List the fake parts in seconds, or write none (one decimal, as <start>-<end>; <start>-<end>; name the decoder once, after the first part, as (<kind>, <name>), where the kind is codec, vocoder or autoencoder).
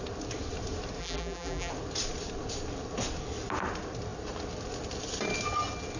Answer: 1.0-1.7 (vocoder, BigVGAN v2)